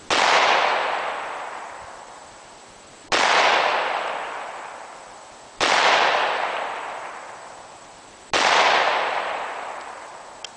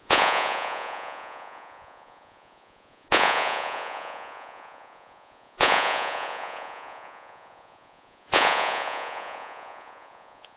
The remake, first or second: second